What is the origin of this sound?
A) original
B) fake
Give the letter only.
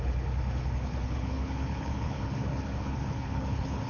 B